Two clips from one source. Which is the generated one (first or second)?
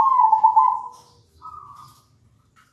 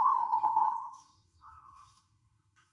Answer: second